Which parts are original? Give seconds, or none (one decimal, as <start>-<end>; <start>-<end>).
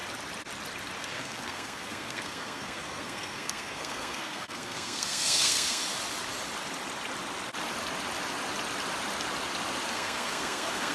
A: 0.0-1.0; 5.8-9.9